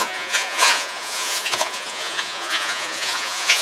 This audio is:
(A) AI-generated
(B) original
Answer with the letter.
A